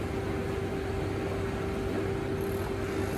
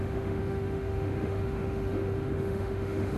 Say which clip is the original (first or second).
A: first